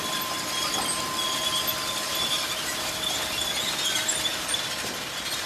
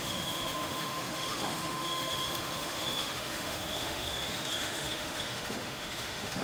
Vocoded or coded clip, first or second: second